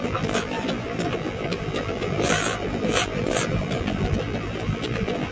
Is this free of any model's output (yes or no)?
no